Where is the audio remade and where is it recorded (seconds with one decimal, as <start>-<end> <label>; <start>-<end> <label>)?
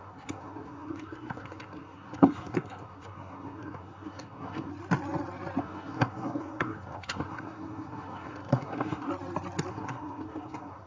0.0-4.7 remade; 4.7-5.6 recorded; 5.6-9.1 remade; 9.1-9.7 recorded; 9.7-10.9 remade